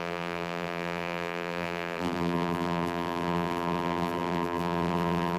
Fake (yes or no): yes